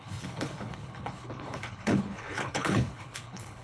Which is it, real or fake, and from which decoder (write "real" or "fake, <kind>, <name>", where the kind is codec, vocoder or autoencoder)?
fake, codec, HILCodec